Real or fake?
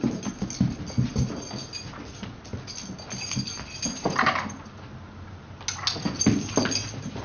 real